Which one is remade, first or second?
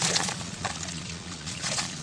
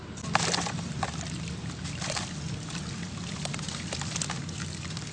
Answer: first